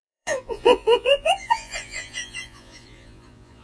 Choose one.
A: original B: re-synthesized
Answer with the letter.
B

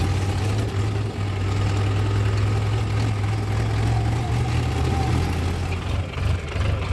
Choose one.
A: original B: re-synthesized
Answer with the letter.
A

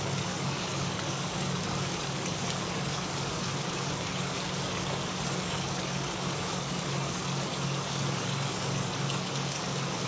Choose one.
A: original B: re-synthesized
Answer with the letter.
B